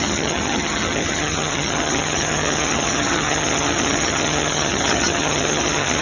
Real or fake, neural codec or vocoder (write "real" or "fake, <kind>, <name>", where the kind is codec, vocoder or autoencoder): fake, vocoder, HiFi-GAN